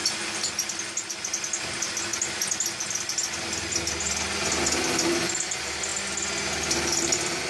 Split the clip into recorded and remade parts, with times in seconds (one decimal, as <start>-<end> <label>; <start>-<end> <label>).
0.0-7.5 recorded